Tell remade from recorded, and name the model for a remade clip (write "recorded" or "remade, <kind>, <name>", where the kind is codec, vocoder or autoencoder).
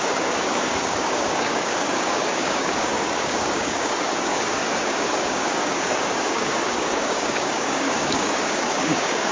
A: remade, codec, DAC